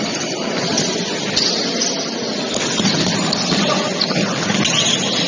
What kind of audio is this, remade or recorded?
recorded